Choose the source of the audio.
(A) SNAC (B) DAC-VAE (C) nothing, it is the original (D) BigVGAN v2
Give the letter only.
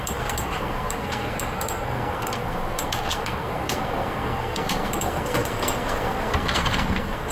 A